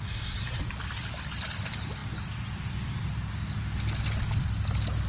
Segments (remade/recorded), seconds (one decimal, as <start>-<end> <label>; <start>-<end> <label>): 0.0-5.1 recorded